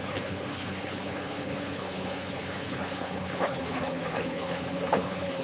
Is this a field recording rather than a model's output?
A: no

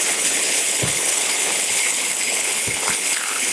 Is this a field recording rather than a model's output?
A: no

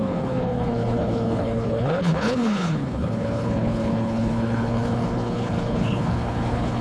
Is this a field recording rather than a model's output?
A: no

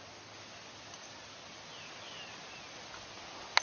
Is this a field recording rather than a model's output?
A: yes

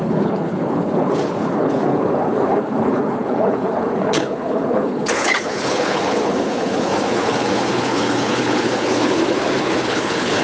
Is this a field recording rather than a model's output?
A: no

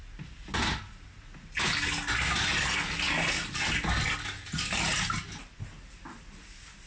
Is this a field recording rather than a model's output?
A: yes